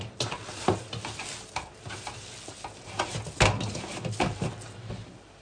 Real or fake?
real